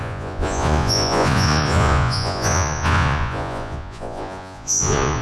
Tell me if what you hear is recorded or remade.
remade